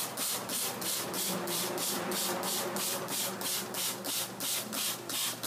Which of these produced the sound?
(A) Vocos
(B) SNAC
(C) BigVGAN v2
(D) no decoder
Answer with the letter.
C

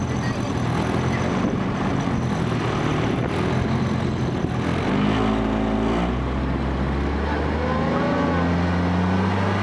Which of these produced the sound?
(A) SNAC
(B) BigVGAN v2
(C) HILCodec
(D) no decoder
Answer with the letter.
D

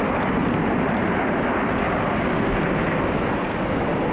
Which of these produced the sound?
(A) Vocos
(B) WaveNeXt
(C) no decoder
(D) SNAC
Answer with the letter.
C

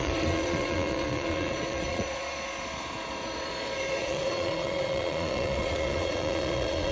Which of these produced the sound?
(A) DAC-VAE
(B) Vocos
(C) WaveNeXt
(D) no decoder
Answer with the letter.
B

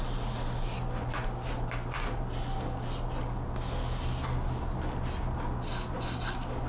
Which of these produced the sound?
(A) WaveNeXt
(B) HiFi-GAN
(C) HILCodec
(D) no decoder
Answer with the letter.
D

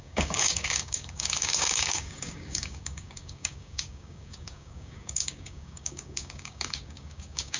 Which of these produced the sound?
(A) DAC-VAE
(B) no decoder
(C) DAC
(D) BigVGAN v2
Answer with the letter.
C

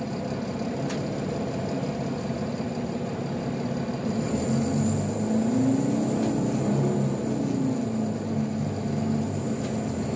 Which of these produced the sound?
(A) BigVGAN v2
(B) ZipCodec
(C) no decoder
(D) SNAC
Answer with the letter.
C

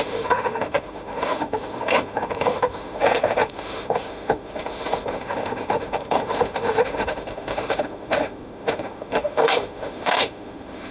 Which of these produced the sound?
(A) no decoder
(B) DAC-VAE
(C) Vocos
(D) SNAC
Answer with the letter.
B